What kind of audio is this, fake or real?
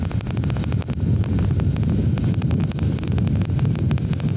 real